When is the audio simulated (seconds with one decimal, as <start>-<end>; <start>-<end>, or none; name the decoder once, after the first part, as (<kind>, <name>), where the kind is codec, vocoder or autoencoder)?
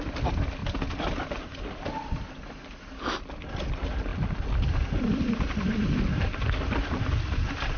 none